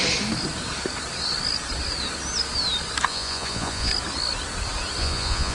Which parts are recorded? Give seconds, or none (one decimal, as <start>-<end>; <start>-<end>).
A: 0.0-3.1; 3.9-5.0